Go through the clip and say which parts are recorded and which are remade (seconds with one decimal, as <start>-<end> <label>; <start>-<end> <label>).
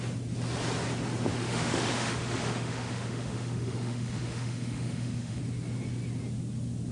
0.0-1.3 recorded; 1.3-5.4 remade; 5.4-6.9 recorded